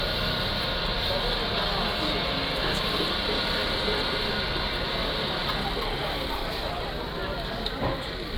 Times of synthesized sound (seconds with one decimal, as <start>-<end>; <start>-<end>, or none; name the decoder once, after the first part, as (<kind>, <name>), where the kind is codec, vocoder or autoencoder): 5.4-6.7 (vocoder, BigVGAN v2)